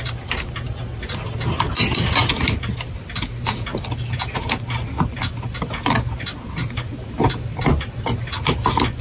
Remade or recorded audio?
recorded